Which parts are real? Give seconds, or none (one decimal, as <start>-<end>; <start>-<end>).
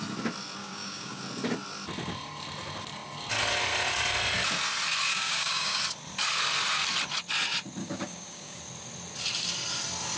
0.0-0.6; 1.2-5.1; 5.8-7.8; 8.6-10.2